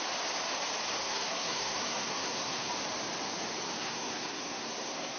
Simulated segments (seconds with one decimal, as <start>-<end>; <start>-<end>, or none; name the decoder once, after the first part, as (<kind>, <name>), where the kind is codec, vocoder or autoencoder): 1.0-2.7 (codec, SNAC); 3.8-5.2